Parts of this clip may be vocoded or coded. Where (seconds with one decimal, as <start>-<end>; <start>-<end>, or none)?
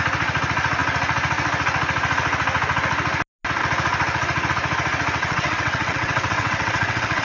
5.2-7.2